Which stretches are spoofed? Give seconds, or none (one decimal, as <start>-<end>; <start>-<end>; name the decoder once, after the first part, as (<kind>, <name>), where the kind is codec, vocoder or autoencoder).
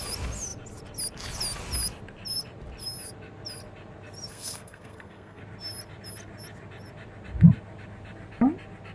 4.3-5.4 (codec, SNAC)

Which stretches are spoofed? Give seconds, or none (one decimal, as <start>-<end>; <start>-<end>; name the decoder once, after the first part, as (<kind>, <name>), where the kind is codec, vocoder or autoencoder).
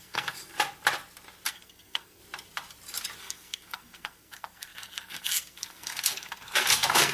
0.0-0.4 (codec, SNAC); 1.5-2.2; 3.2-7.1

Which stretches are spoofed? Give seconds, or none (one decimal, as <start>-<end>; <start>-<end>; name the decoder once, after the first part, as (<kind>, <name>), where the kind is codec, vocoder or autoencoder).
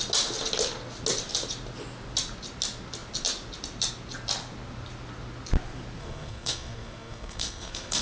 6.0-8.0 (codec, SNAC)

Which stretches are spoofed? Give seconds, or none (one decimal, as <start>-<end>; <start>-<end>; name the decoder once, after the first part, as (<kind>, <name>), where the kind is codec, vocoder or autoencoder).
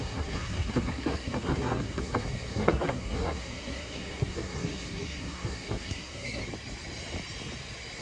0.0-6.4 (codec, SNAC)